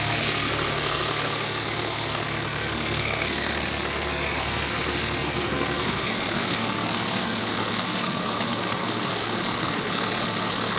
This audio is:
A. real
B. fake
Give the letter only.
B